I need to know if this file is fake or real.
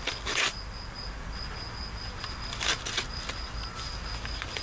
real